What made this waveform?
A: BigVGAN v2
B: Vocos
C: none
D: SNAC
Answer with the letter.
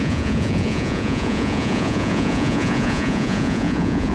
B